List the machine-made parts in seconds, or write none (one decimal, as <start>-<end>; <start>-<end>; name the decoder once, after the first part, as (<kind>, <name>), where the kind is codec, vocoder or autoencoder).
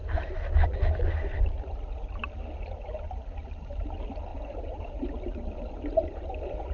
4.3-5.1 (vocoder, BigVGAN v2)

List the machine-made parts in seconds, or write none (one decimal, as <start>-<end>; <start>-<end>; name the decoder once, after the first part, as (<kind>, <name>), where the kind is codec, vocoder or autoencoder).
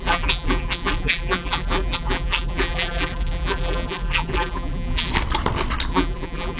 0.0-5.1 (vocoder, BigVGAN v2); 5.9-6.6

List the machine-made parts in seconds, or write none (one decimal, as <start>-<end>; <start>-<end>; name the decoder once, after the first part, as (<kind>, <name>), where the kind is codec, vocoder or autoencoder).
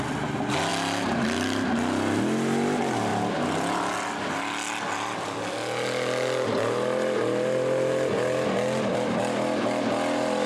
none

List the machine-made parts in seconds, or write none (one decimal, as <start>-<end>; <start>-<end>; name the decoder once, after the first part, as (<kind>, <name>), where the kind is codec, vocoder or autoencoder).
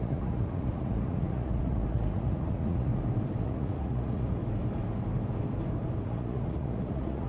0.0-2.9 (vocoder, Vocos); 3.4-4.4; 6.0-7.3